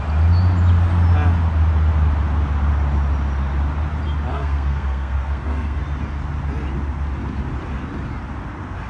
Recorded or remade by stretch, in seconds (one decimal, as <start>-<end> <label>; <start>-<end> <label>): 0.0-4.3 recorded; 4.3-5.8 remade; 5.8-8.9 recorded